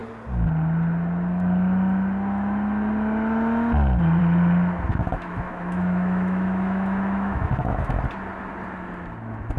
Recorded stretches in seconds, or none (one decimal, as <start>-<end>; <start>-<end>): 0.0-4.9; 8.0-9.6